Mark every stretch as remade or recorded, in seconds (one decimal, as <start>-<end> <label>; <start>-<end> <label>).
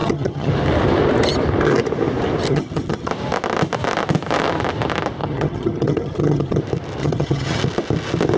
0.0-0.5 remade; 0.5-2.5 recorded; 2.5-3.1 remade; 3.1-5.2 recorded; 5.2-6.6 remade; 6.6-7.0 recorded; 7.0-7.6 remade; 7.6-8.4 recorded